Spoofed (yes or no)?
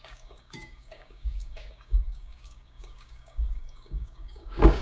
yes